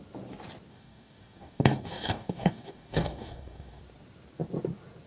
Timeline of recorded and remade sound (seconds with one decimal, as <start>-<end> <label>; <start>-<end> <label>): 0.0-0.7 recorded; 0.7-3.8 remade; 3.8-5.1 recorded